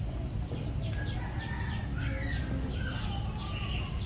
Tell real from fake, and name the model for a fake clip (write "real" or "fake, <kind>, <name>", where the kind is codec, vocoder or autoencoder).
real